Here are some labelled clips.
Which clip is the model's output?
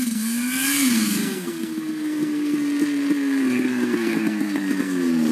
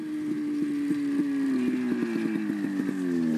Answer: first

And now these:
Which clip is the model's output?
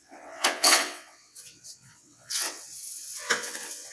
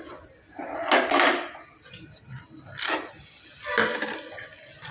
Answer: first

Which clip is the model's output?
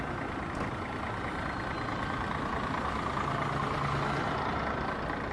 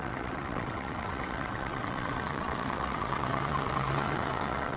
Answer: second